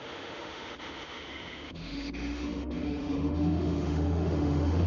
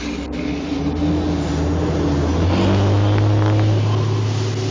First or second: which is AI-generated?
first